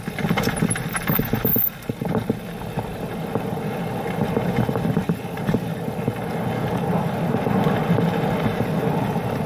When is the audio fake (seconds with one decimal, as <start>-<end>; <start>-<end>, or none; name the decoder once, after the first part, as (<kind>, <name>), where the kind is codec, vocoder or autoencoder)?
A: none